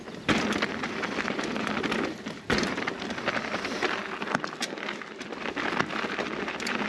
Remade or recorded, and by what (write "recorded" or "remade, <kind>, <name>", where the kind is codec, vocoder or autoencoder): recorded